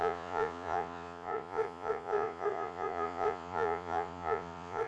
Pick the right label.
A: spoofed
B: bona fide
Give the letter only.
A